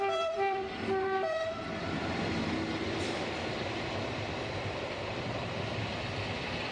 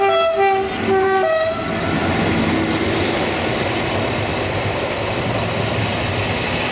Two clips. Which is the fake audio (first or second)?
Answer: first